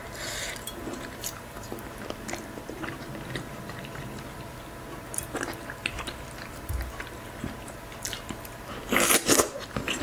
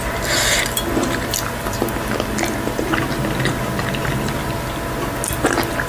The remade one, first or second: first